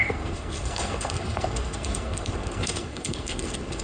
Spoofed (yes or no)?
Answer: yes